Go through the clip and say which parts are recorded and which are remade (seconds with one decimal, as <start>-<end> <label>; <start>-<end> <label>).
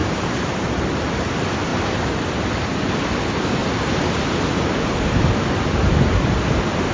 0.0-0.8 remade; 0.8-3.6 recorded; 3.6-5.3 remade; 5.3-6.9 recorded